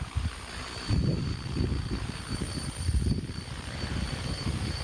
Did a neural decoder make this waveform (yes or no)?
yes